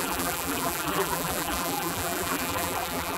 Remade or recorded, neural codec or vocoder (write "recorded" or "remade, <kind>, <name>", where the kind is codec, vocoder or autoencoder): remade, vocoder, BigVGAN v2